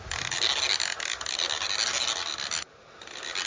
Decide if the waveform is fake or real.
real